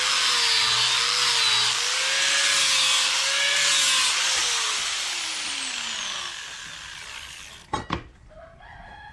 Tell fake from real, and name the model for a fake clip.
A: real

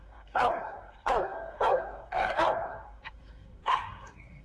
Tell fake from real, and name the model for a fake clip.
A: fake, codec, SNAC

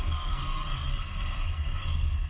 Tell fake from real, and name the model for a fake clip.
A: fake, codec, SNAC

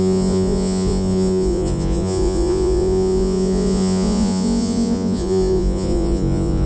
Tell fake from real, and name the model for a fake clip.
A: fake, vocoder, Vocos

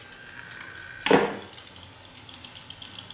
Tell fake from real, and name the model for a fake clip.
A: real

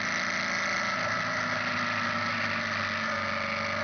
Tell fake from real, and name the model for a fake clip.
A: real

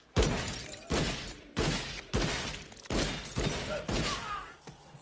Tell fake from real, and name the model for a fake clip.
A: real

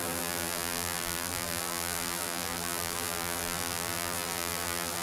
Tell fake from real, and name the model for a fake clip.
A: fake, vocoder, BigVGAN v2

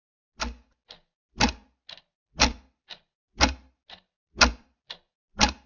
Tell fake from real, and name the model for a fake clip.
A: real